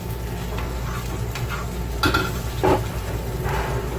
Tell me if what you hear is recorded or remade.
recorded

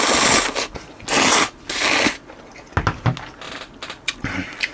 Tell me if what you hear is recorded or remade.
recorded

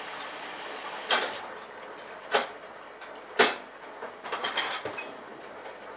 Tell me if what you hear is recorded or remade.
recorded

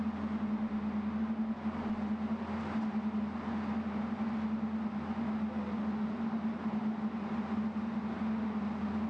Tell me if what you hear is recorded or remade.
recorded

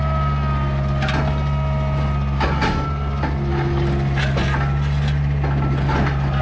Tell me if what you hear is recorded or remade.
recorded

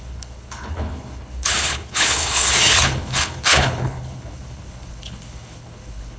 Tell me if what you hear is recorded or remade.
remade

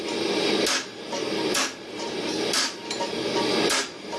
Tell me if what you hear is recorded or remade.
recorded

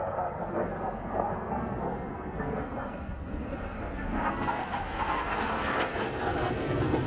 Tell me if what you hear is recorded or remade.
remade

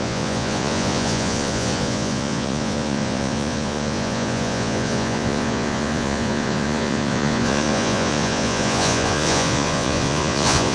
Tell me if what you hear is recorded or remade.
remade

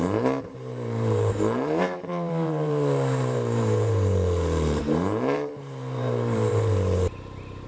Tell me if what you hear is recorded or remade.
remade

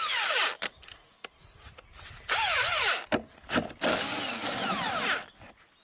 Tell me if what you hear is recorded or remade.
recorded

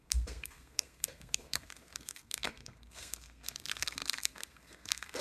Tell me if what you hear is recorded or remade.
remade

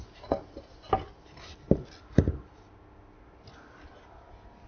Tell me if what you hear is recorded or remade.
recorded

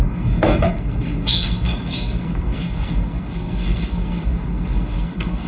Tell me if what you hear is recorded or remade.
remade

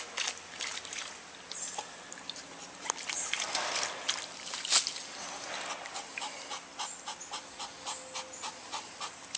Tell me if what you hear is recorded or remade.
recorded